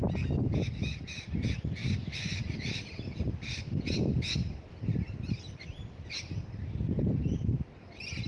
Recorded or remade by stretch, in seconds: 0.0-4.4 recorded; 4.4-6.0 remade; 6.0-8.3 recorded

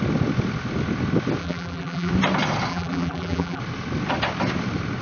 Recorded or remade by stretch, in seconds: 0.0-1.4 recorded; 1.4-2.1 remade; 2.1-2.7 recorded; 2.7-3.6 remade; 3.6-5.0 recorded

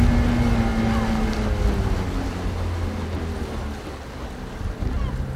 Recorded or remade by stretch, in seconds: 0.0-5.4 recorded

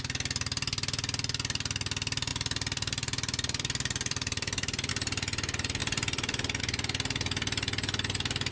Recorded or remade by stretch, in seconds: 0.0-2.3 recorded; 2.3-4.9 remade; 4.9-5.8 recorded; 5.8-6.6 remade; 6.6-8.5 recorded

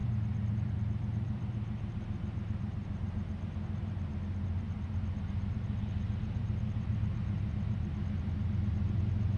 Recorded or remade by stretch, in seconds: 0.0-9.4 remade